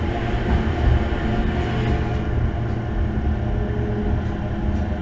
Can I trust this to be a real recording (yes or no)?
yes